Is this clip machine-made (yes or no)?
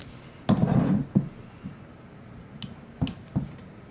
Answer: no